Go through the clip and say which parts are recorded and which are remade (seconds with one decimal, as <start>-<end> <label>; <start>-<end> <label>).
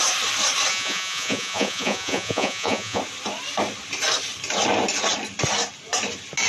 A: 0.0-0.7 recorded; 0.7-3.0 remade; 3.0-6.5 recorded